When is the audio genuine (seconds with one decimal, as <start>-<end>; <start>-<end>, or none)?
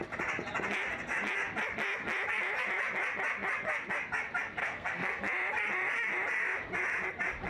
0.0-4.6; 5.2-7.5